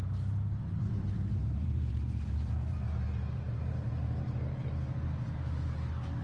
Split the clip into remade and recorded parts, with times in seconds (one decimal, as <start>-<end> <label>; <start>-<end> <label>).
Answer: 0.0-0.6 recorded; 0.6-3.9 remade; 3.9-6.2 recorded